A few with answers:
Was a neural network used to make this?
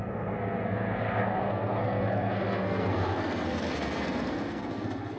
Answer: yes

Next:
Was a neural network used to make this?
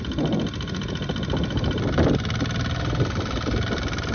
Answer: no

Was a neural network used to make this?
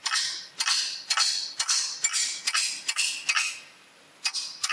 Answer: no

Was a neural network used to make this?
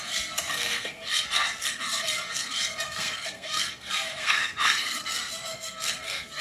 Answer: yes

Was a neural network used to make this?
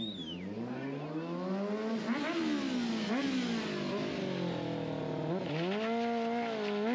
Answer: no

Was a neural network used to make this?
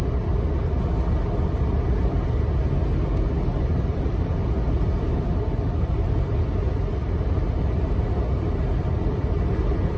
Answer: no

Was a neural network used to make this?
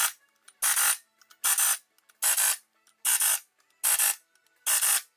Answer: no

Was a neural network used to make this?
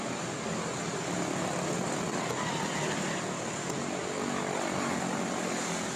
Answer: no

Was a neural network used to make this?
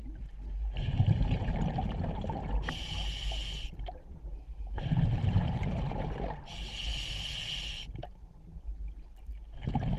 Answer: no